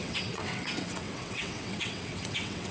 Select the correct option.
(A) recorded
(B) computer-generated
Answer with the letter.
B